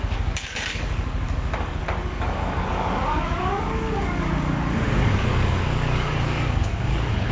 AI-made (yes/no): yes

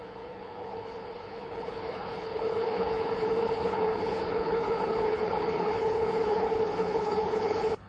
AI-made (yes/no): yes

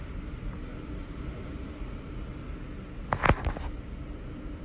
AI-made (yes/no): no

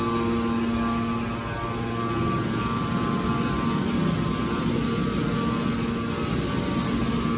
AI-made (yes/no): no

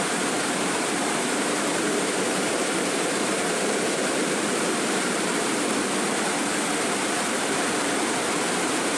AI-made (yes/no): yes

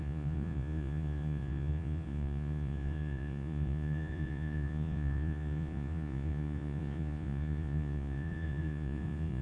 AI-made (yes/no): yes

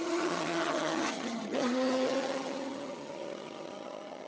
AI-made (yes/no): yes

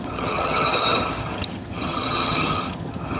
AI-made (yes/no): yes